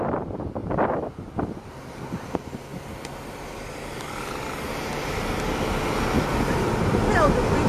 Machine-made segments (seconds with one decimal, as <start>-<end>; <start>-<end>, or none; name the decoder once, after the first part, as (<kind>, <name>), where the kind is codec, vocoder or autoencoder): none